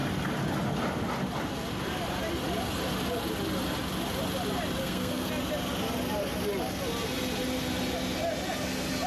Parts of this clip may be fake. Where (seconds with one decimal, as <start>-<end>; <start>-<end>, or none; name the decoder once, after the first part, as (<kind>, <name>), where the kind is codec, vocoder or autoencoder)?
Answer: 4.8-5.3 (codec, SNAC)